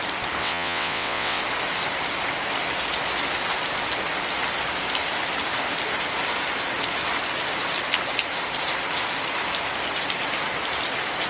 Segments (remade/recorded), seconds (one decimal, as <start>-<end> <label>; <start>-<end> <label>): 0.0-0.4 recorded; 0.4-1.4 remade; 1.4-11.3 recorded